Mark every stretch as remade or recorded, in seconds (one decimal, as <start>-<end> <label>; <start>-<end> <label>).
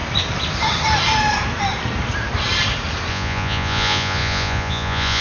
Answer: 0.0-3.1 recorded; 3.1-5.2 remade